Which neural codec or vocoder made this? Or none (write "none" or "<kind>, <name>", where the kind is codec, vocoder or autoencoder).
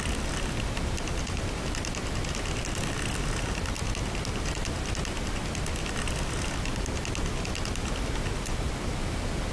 none